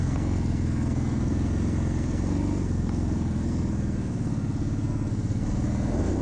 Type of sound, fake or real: fake